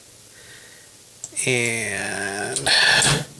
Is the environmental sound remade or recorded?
recorded